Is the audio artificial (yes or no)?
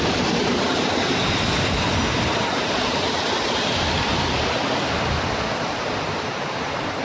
no